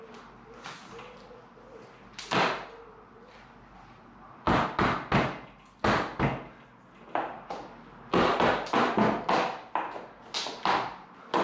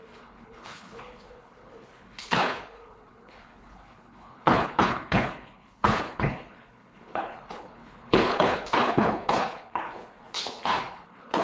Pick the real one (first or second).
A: first